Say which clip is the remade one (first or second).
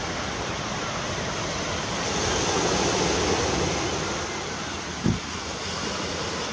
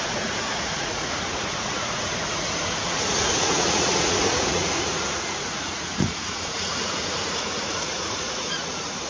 second